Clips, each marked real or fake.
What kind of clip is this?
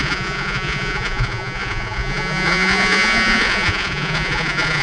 fake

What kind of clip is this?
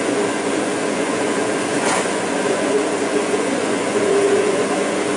fake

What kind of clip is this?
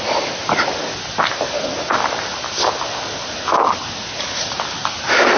real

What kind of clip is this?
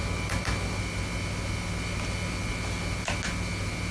real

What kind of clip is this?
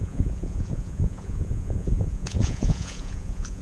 fake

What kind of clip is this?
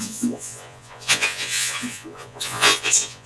fake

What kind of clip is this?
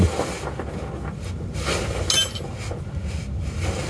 real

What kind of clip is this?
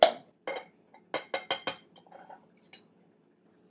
real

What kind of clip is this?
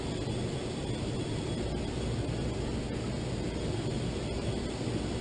real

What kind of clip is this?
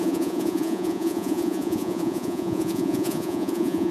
fake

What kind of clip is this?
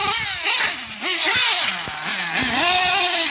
real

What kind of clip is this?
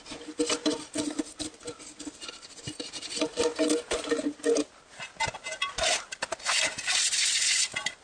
real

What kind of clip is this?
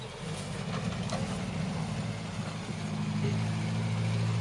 real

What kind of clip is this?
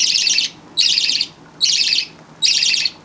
real